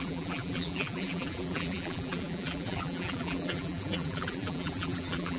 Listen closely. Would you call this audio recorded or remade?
remade